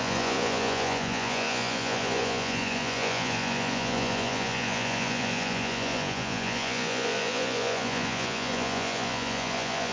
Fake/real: fake